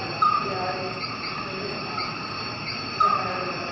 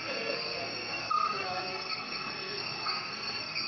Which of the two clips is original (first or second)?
first